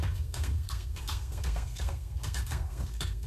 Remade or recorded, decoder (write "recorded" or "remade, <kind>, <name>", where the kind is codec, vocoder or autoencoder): remade, codec, SNAC